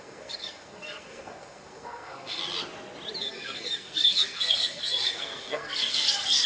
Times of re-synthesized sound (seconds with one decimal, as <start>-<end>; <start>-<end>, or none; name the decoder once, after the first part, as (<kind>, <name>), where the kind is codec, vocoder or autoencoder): 0.0-2.4 (codec, SNAC); 3.2-6.5